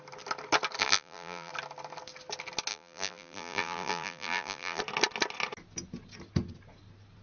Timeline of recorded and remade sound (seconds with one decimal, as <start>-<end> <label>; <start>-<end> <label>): 0.0-0.8 recorded; 0.8-1.5 remade; 1.5-2.7 recorded; 2.7-4.8 remade; 4.8-7.2 recorded